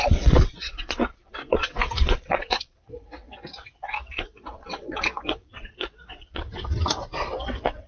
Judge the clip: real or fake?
fake